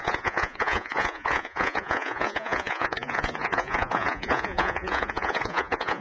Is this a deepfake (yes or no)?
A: yes